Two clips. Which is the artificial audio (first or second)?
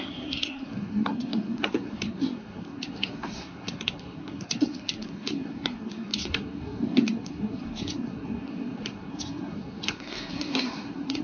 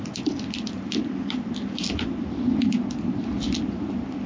first